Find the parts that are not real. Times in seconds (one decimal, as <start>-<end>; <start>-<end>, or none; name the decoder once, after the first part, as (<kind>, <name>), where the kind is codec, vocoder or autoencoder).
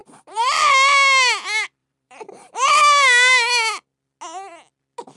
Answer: 0.0-0.7 (vocoder, BigVGAN v2); 1.8-2.8